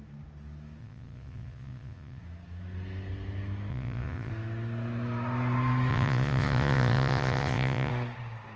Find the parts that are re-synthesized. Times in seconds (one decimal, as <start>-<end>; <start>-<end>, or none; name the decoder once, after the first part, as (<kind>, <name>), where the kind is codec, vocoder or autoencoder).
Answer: 0.8-2.2 (vocoder, Vocos); 3.7-4.3; 5.9-7.9